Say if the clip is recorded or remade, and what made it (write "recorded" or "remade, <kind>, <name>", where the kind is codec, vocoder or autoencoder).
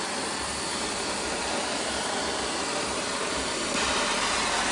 recorded